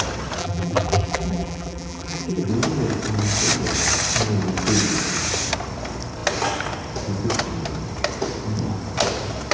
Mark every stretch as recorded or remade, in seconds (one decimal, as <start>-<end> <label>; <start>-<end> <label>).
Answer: 0.0-0.4 recorded; 0.4-2.5 remade; 2.5-9.5 recorded